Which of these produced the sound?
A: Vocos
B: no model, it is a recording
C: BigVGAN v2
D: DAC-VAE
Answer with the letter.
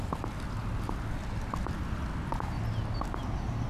B